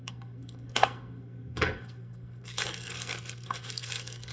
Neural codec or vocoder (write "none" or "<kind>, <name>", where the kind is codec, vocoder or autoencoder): codec, SNAC